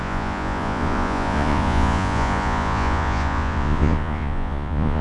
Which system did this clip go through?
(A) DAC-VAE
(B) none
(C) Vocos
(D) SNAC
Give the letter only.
C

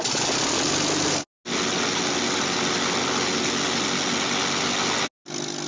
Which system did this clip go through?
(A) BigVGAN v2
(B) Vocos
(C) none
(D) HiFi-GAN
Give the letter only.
C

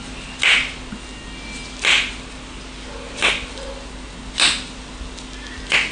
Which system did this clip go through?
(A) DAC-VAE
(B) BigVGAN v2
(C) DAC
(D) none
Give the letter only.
D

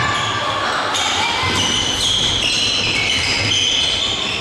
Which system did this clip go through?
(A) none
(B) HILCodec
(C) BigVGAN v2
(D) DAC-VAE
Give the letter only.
A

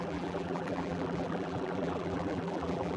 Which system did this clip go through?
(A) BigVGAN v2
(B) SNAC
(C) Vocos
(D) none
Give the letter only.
A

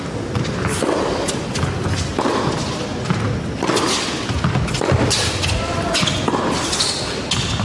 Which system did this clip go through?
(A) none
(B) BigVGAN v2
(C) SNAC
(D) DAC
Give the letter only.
A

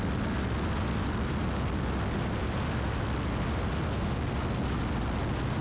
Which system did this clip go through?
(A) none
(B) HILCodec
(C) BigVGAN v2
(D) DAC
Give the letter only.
A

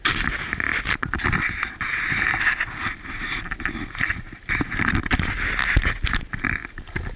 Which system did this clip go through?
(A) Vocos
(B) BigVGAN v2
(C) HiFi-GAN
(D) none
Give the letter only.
D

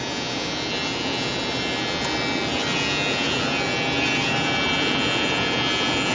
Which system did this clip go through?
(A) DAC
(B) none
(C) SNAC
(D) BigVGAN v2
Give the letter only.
B